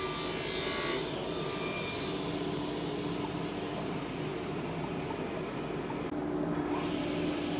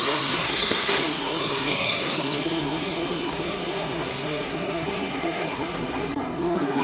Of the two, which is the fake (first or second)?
second